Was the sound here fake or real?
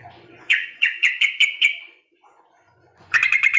fake